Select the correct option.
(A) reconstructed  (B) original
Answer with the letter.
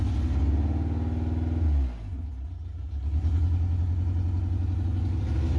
B